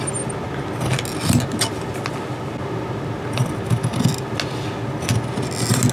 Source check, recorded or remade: recorded